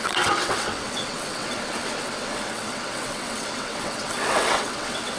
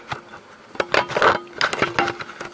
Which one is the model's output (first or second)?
first